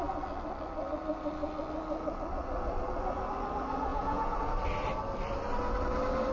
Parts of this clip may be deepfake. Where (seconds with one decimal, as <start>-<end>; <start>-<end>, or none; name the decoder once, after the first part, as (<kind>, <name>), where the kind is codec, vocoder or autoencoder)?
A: 3.9-4.4 (vocoder, Vocos)